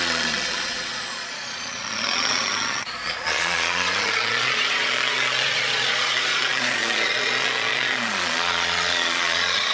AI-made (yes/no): yes